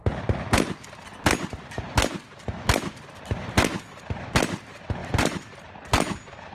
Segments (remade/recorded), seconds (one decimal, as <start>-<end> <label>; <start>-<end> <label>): 0.0-5.0 recorded; 5.0-5.6 remade; 5.6-6.5 recorded